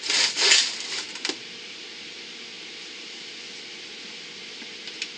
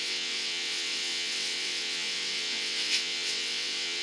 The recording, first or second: first